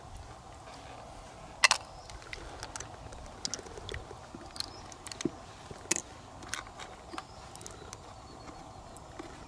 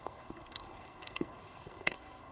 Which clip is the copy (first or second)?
second